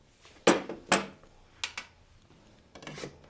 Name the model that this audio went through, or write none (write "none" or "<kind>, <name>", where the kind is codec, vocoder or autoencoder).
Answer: none